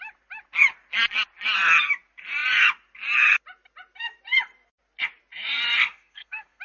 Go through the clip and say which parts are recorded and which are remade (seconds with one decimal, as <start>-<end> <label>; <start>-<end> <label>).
0.0-5.8 recorded; 5.8-6.6 remade